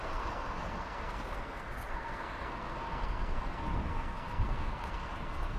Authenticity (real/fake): fake